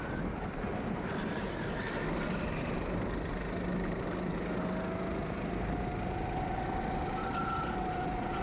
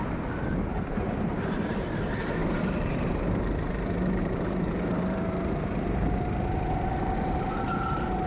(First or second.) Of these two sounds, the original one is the first